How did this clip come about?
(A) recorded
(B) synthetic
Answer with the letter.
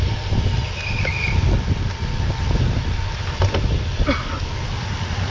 A